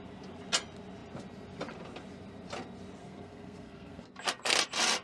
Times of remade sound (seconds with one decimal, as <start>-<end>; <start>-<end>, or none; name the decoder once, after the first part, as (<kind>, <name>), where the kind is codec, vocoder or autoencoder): 3.0-4.1 (codec, SNAC)